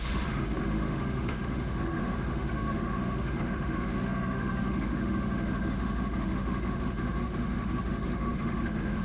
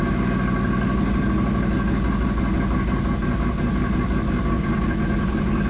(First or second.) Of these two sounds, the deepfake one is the first